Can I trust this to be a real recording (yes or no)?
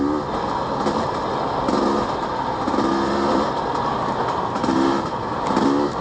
yes